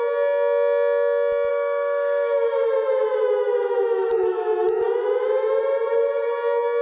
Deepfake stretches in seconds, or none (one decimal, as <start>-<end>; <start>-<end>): 1.5-5.6